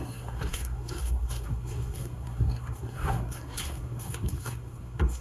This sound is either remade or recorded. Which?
remade